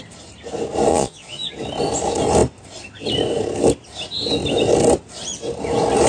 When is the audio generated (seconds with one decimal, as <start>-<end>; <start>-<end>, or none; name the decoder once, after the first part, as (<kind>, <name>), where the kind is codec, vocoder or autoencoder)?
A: 0.9-1.5 (vocoder, Vocos)